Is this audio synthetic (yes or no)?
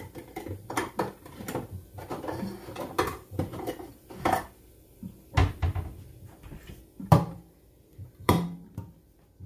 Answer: no